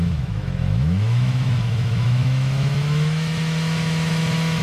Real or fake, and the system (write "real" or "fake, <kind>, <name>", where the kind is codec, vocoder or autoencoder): fake, autoencoder, DAC-VAE